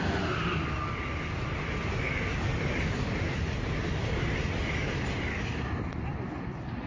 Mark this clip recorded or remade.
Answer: recorded